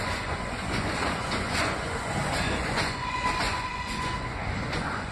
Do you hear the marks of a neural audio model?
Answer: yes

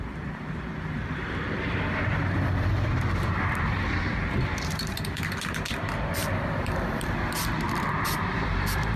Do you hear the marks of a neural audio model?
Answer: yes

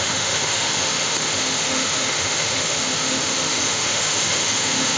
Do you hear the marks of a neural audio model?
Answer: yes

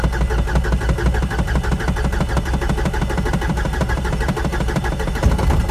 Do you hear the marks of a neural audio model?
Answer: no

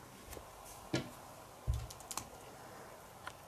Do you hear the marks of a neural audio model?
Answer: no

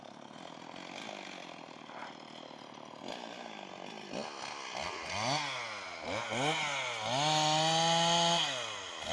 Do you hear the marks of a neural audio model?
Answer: no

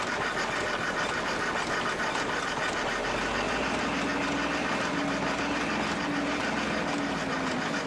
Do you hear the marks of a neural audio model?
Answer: no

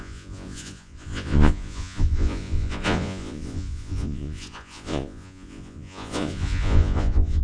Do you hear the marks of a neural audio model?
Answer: yes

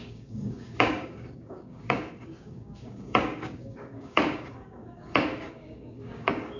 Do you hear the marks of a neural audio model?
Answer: yes